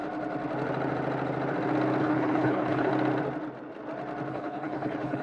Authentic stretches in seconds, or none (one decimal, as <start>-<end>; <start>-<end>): 0.0-2.0; 2.9-4.3